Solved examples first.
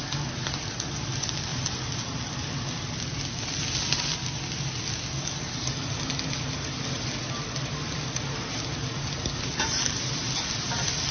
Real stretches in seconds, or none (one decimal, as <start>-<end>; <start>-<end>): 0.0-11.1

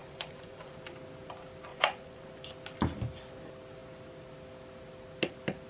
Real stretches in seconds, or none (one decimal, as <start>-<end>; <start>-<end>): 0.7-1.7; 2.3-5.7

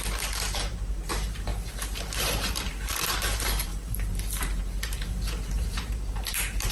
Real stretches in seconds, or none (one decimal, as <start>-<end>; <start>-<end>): none

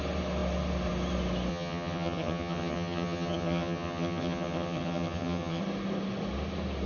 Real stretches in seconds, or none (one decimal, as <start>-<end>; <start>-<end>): 0.0-1.5; 5.6-6.9

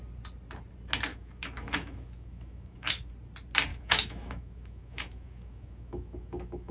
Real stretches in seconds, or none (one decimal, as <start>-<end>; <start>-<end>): 0.0-1.1; 3.1-3.7

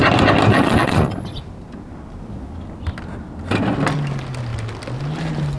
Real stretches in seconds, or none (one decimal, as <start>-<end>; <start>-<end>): 0.0-0.5; 1.4-5.6

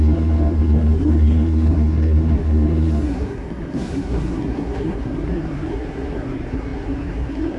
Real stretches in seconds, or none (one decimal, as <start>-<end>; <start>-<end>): none